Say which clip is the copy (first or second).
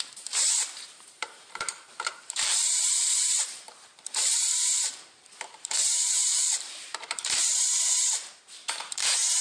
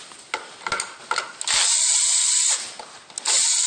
first